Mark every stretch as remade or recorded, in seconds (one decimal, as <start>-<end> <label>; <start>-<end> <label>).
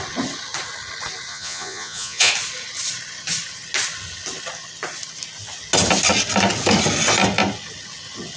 0.0-1.3 recorded; 1.3-2.3 remade; 2.3-8.4 recorded